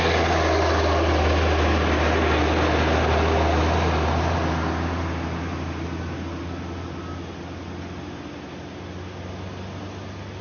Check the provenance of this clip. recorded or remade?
recorded